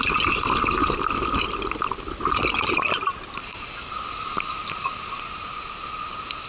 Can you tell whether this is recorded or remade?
recorded